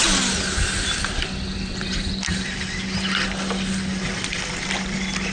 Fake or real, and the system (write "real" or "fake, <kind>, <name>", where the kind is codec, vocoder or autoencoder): real